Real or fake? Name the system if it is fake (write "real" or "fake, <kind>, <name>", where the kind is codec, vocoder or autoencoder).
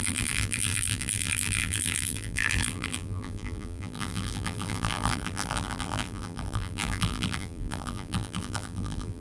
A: fake, vocoder, BigVGAN v2